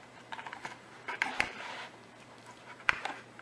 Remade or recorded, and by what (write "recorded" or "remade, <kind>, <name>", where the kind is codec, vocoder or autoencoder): remade, vocoder, BigVGAN v2